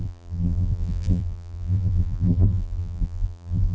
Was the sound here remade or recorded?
remade